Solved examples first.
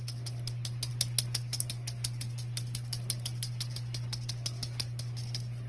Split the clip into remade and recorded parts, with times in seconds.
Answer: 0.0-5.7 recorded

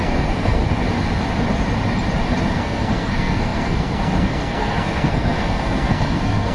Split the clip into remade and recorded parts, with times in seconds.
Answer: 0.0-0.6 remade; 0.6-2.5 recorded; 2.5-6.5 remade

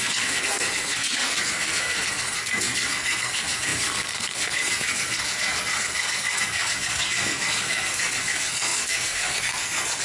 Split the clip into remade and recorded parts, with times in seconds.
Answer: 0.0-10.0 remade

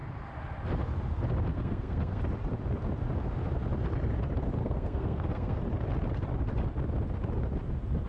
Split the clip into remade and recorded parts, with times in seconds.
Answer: 0.0-1.5 recorded; 1.5-2.2 remade; 2.2-4.6 recorded; 4.6-5.6 remade; 5.6-8.1 recorded

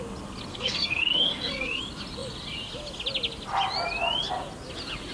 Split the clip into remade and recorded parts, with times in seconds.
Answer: 0.0-0.5 recorded; 0.5-1.8 remade; 1.8-5.1 recorded